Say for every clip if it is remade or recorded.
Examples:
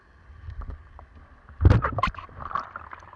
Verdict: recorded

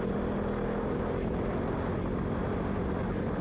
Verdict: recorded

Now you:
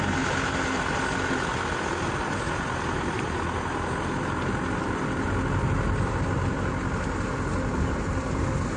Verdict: recorded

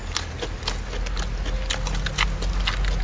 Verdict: recorded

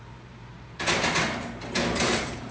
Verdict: remade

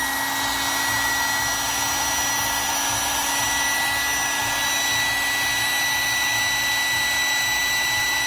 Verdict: recorded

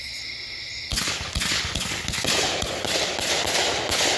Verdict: recorded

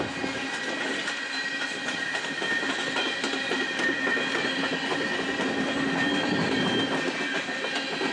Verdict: recorded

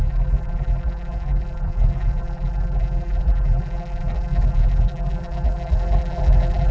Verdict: remade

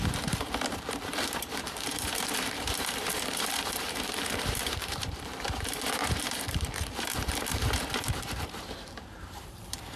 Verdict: remade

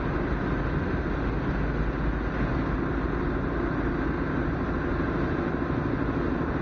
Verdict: recorded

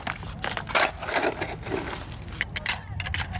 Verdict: recorded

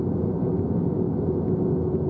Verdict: recorded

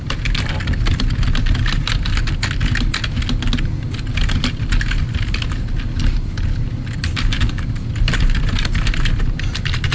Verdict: recorded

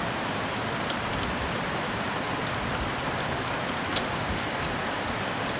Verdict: remade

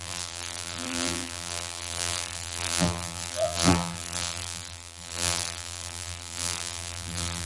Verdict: remade